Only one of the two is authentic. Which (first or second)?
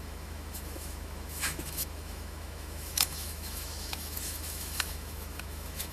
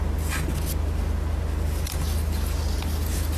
second